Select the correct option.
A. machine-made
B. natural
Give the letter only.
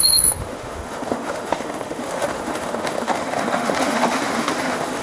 A